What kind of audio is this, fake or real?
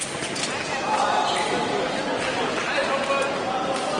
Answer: real